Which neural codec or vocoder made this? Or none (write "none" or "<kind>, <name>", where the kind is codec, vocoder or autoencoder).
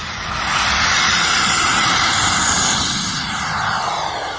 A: vocoder, BigVGAN v2